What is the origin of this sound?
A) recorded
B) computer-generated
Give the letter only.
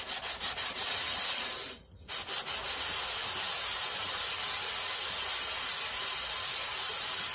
B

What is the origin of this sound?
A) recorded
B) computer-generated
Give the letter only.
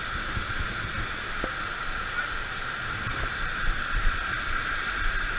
A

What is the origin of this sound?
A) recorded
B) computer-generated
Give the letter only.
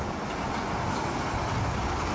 A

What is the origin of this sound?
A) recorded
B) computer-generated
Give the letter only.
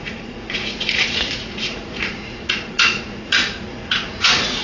B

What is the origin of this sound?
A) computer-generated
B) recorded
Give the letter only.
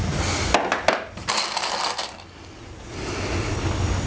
B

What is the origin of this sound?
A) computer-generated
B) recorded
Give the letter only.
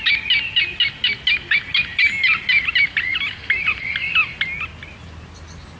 B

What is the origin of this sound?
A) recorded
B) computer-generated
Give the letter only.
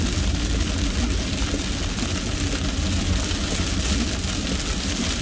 A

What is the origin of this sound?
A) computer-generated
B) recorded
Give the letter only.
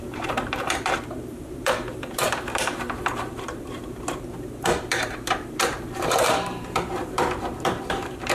A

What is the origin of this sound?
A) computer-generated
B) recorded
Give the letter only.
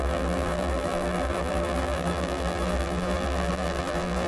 A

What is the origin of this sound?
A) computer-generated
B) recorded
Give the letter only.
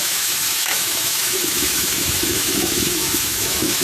A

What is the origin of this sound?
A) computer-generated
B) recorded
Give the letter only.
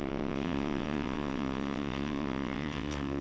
A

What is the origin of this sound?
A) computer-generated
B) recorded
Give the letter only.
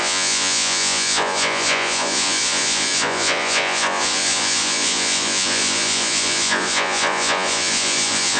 A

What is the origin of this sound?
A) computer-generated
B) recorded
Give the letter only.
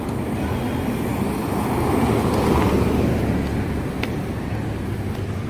B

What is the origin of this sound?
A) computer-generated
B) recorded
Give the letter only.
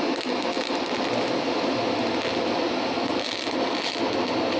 B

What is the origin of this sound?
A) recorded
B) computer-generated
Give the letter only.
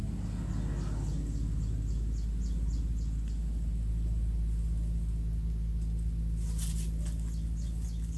A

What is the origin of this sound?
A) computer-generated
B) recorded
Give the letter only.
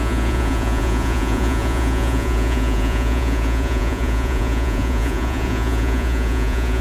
A